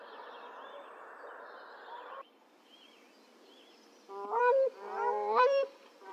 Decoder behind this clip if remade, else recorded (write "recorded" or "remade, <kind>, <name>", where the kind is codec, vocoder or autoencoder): remade, vocoder, BigVGAN v2